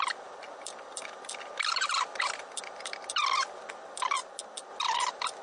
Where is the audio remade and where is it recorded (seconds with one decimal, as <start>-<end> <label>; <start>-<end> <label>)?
0.0-1.3 remade; 1.3-5.4 recorded